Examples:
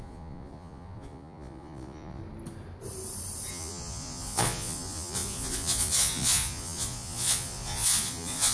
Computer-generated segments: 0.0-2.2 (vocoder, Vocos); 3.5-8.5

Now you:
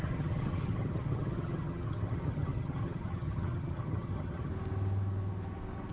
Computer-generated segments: 0.0-4.5 (vocoder, HiFi-GAN)

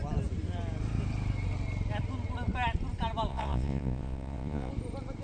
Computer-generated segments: 3.3-4.7 (vocoder, Vocos)

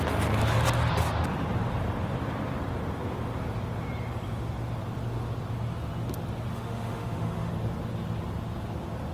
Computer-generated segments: 6.5-7.5 (autoencoder, DAC-VAE)

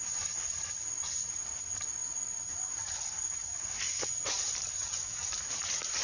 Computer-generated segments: none

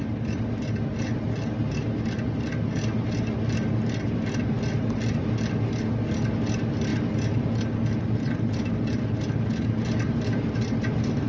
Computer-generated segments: none

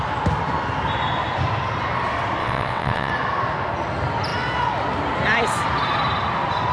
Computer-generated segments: 2.4-3.1 (vocoder, WaveNeXt)

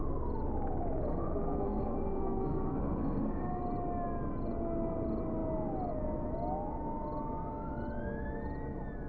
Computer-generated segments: 1.1-3.6 (codec, SNAC)